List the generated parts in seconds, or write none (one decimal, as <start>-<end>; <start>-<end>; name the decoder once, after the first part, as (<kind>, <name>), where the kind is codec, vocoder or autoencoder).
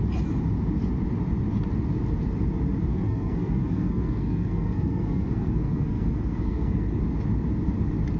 2.9-7.0 (codec, SNAC)